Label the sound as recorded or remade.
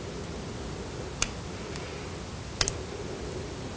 recorded